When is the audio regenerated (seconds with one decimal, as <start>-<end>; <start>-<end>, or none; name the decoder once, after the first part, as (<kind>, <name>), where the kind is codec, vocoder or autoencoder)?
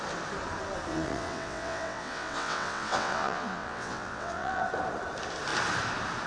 0.9-4.6 (vocoder, WaveNeXt)